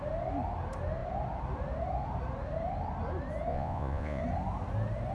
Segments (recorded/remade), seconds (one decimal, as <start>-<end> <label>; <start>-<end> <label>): 0.0-3.5 recorded; 3.5-4.2 remade; 4.2-5.1 recorded